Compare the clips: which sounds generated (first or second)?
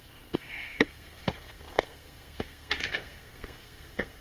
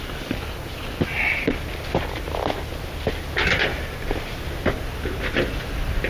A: first